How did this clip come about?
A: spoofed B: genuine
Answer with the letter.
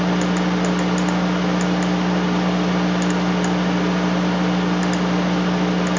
B